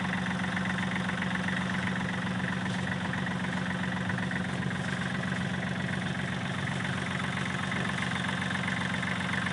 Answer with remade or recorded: recorded